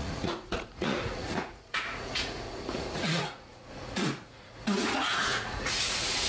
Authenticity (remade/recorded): remade